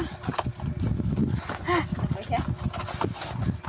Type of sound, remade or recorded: recorded